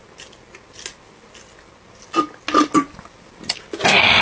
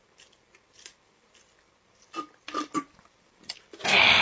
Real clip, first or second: first